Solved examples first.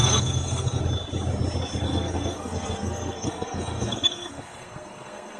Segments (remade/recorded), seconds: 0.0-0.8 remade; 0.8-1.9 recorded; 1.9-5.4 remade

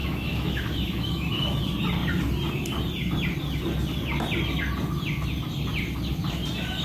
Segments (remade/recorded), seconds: 0.0-1.6 remade; 1.6-6.8 recorded

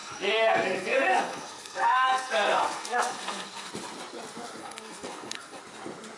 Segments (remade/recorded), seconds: 0.0-3.7 remade; 3.7-4.6 recorded; 4.6-5.6 remade; 5.6-6.2 recorded